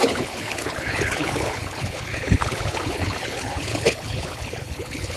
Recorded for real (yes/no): no